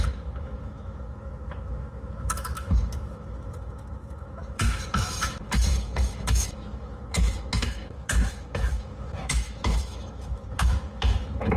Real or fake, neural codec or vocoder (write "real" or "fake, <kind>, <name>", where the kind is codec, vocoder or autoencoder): fake, autoencoder, DAC-VAE